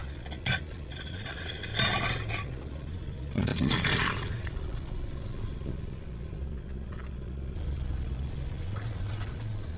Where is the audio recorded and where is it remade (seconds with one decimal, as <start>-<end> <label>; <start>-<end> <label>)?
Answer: 0.0-1.7 remade; 1.7-2.3 recorded; 2.3-9.8 remade